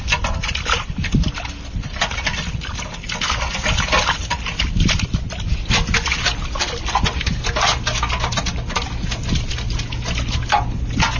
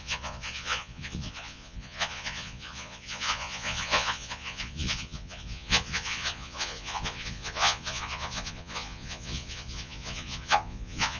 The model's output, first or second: second